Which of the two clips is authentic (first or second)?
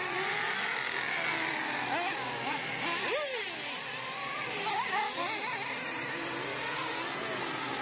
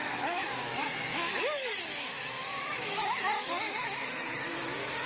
first